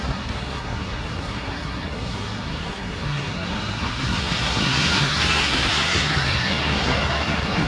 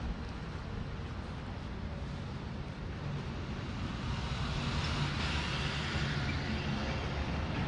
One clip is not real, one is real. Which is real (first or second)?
second